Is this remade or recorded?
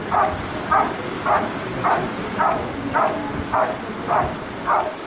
recorded